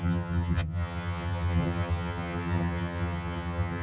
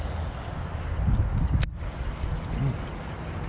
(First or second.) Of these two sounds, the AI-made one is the first